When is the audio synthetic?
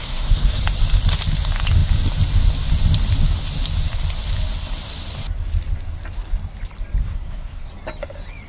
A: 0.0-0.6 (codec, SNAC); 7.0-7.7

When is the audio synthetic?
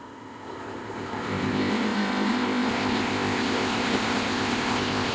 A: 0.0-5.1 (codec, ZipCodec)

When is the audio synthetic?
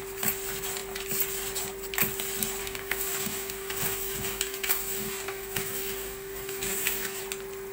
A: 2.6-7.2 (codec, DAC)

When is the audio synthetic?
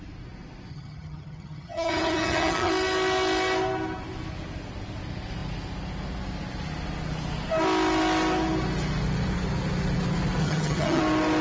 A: 0.7-2.7 (vocoder, HiFi-GAN); 10.4-11.0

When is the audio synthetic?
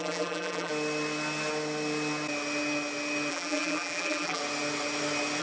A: 0.0-0.7 (vocoder, BigVGAN v2); 3.3-4.4